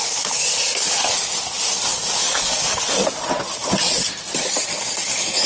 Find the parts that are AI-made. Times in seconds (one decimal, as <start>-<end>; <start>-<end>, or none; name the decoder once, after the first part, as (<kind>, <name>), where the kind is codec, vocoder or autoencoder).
1.9-2.8 (codec, DAC); 4.7-5.5

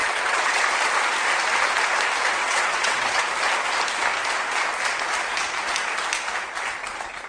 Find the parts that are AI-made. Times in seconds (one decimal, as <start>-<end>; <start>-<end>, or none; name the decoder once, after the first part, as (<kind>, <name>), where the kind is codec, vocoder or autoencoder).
0.0-0.6 (vocoder, WaveNeXt); 2.4-3.2